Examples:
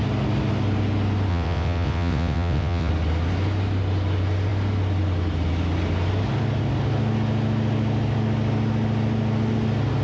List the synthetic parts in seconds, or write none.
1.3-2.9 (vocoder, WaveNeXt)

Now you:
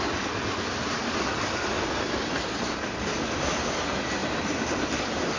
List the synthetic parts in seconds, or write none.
none

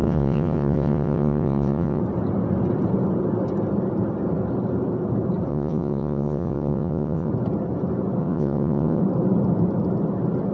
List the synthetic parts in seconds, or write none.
0.0-2.0 (vocoder, WaveNeXt); 5.5-7.3; 8.2-9.0

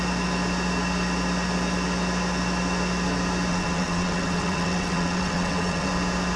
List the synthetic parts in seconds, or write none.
3.5-5.9 (vocoder, WaveNeXt)